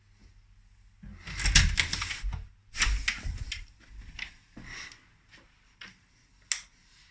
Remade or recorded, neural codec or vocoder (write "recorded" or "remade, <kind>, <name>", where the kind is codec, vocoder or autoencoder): recorded